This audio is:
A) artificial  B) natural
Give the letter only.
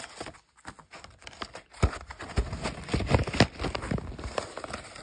B